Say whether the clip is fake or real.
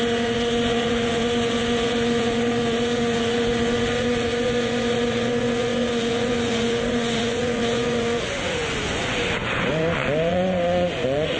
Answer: fake